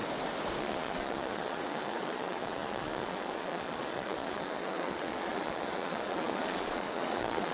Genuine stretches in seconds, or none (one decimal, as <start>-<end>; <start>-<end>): 0.0-0.6